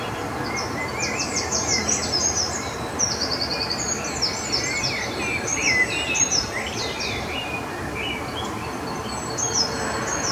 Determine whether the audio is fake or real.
real